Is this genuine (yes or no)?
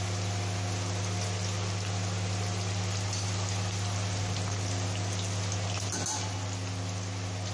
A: yes